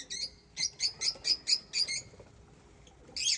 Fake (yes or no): no